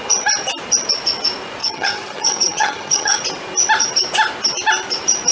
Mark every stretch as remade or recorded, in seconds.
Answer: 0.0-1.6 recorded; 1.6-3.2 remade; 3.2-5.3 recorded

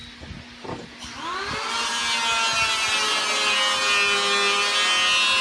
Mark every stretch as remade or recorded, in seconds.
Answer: 0.0-5.4 recorded

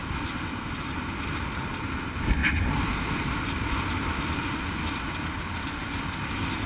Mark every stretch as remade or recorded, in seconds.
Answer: 0.0-6.7 recorded

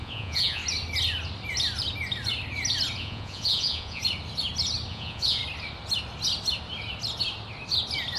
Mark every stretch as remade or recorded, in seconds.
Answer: 0.0-0.6 remade; 0.6-3.0 recorded; 3.0-4.0 remade; 4.0-4.9 recorded; 4.9-5.4 remade; 5.4-8.2 recorded

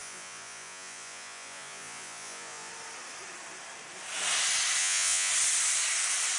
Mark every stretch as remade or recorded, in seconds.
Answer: 0.0-2.7 remade; 2.7-4.8 recorded; 4.8-5.3 remade; 5.3-6.4 recorded

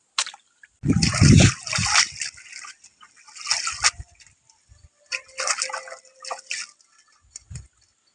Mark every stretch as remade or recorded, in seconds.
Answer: 0.0-8.1 recorded